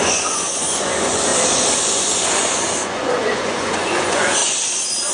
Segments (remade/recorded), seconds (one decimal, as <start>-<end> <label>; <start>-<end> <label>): 0.0-1.3 remade; 1.3-1.8 recorded; 1.8-4.4 remade; 4.4-5.1 recorded